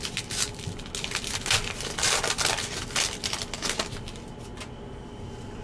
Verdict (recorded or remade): recorded